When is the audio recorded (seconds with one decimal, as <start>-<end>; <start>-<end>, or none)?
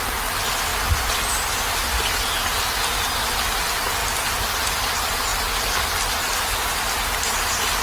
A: 0.0-7.8